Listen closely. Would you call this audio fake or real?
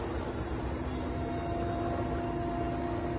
real